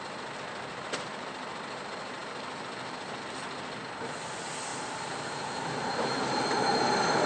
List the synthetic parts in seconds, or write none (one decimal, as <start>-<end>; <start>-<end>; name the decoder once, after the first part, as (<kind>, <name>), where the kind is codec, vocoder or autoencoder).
0.7-1.3 (vocoder, BigVGAN v2); 4.7-6.4